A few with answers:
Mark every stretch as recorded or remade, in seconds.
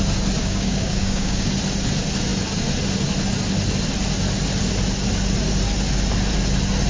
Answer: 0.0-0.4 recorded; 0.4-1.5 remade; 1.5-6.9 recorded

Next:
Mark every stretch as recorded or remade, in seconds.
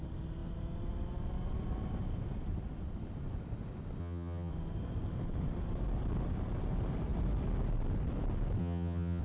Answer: 0.0-4.0 recorded; 4.0-4.5 remade; 4.5-8.6 recorded; 8.6-9.2 remade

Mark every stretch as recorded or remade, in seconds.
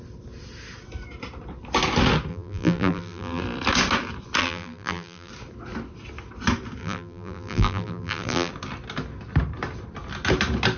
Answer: 0.0-2.3 recorded; 2.3-3.4 remade; 3.4-4.4 recorded; 4.4-5.3 remade; 5.3-6.8 recorded; 6.8-8.5 remade; 8.5-10.8 recorded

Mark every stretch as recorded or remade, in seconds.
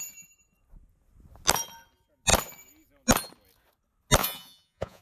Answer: 0.0-4.2 recorded; 4.2-5.0 remade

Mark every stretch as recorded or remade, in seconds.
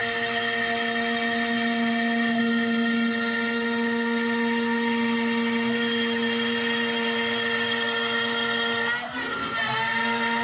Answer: 0.0-10.4 recorded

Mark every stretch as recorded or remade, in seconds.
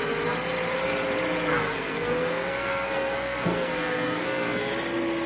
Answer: 0.0-1.5 recorded; 1.5-4.7 remade; 4.7-5.3 recorded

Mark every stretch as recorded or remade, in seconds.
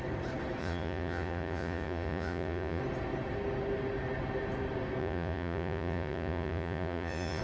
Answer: 0.0-0.6 recorded; 0.6-2.8 remade; 2.8-5.0 recorded; 5.0-7.4 remade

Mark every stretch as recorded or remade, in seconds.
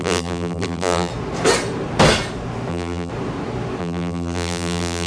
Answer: 0.0-1.1 remade; 1.1-2.7 recorded; 2.7-3.1 remade; 3.1-3.8 recorded; 3.8-5.1 remade